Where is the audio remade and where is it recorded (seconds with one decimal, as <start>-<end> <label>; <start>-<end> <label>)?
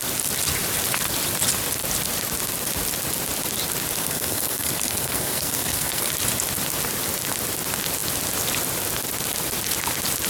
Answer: 0.0-4.0 recorded; 4.0-6.1 remade; 6.1-10.3 recorded